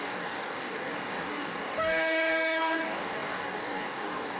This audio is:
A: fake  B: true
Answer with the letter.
A